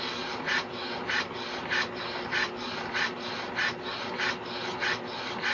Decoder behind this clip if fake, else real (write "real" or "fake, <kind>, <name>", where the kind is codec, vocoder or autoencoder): real